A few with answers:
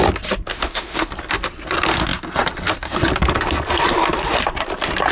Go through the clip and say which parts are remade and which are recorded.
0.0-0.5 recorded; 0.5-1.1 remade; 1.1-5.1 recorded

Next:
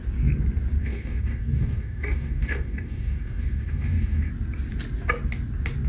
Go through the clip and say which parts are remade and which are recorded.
0.0-0.8 recorded; 0.8-4.3 remade; 4.3-5.9 recorded

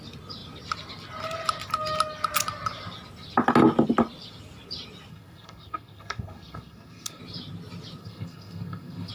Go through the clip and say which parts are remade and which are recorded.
0.0-5.1 recorded; 5.1-7.2 remade; 7.2-8.0 recorded; 8.0-9.1 remade

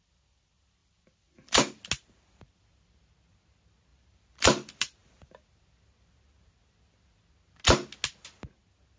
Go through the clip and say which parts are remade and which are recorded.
0.0-0.8 recorded; 0.8-1.8 remade; 1.8-3.9 recorded; 3.9-5.3 remade; 5.3-9.0 recorded

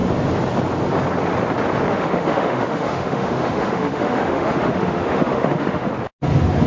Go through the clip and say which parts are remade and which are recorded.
0.0-1.9 recorded; 1.9-5.9 remade; 5.9-6.7 recorded

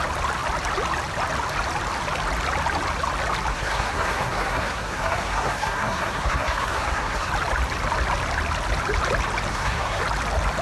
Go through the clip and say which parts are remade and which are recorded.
0.0-3.5 recorded; 3.5-7.3 remade; 7.3-9.5 recorded; 9.5-10.0 remade; 10.0-10.6 recorded

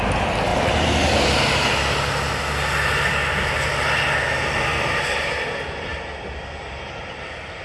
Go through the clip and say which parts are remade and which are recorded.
0.0-0.5 recorded; 0.5-1.2 remade; 1.2-7.6 recorded